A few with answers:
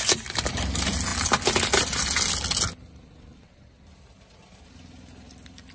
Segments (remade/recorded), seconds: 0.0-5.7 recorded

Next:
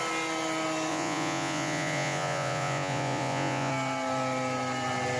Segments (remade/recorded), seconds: 0.0-0.9 recorded; 0.9-3.7 remade; 3.7-5.2 recorded

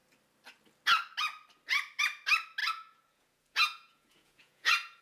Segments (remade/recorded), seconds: 0.0-2.6 recorded; 2.6-5.0 remade

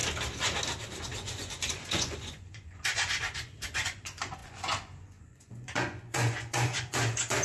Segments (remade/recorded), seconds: 0.0-1.0 recorded; 1.0-7.4 remade